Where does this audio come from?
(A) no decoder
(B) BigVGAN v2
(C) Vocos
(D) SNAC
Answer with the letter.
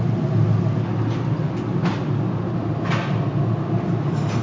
A